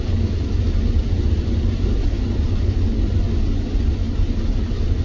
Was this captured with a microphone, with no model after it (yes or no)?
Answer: yes